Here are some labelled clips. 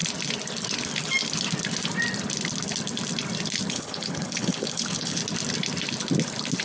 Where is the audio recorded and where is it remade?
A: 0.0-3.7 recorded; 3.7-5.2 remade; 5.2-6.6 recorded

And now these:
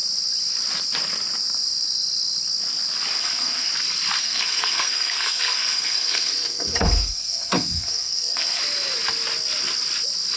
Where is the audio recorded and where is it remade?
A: 0.0-3.2 recorded; 3.2-3.7 remade; 3.7-4.2 recorded; 4.2-8.6 remade; 8.6-10.4 recorded

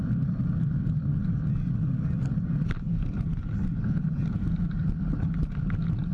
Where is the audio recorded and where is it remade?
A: 0.0-6.1 recorded

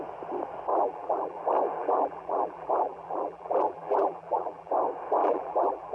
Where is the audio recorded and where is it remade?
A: 0.0-0.7 recorded; 0.7-1.4 remade; 1.4-1.8 recorded; 1.8-4.7 remade; 4.7-5.2 recorded; 5.2-5.9 remade

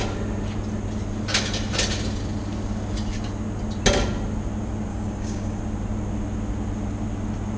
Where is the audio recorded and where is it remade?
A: 0.0-4.9 recorded; 4.9-5.6 remade; 5.6-7.6 recorded